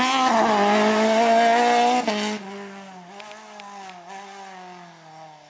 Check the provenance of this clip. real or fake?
real